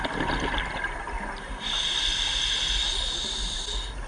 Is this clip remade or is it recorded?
recorded